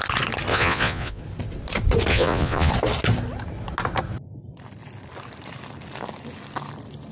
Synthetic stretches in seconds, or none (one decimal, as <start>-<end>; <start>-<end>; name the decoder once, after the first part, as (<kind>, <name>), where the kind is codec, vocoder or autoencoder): 0.5-1.2 (vocoder, Vocos); 2.1-2.7